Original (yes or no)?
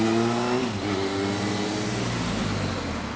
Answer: yes